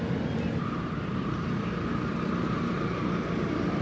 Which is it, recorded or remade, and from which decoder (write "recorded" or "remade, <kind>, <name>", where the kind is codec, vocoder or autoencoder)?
recorded